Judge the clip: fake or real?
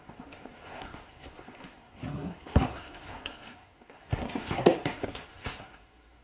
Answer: fake